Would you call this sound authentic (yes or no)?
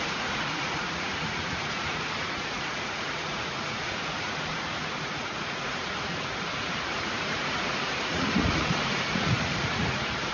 no